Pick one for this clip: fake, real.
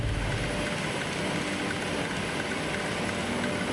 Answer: real